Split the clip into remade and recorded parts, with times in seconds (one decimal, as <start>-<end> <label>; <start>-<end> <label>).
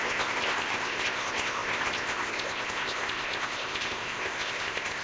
0.0-5.0 remade